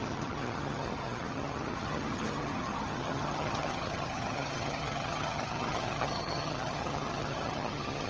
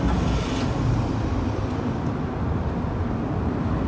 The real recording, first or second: second